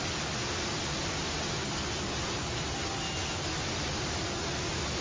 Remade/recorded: recorded